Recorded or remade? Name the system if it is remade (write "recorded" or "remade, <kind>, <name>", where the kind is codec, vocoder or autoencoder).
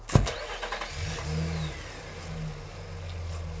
recorded